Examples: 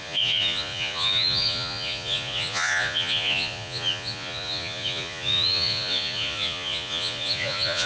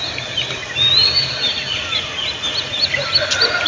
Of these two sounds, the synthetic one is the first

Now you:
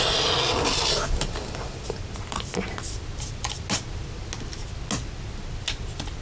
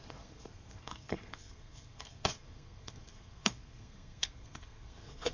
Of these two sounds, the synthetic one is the second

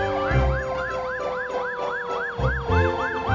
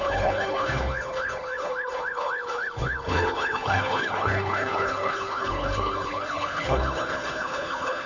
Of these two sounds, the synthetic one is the second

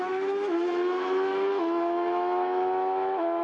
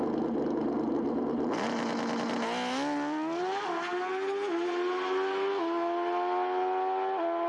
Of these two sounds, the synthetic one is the first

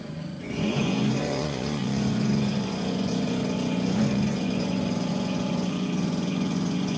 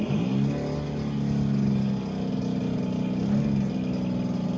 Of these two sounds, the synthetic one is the first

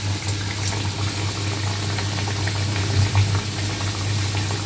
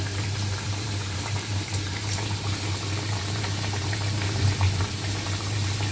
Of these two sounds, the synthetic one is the second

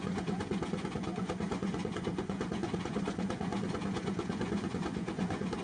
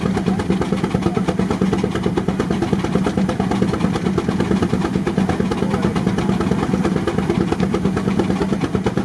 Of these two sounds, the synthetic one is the first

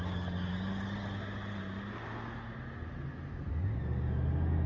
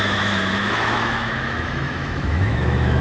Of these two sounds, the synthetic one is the second